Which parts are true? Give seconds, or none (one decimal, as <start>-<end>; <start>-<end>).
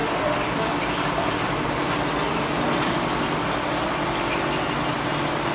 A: 0.9-1.8; 5.1-5.5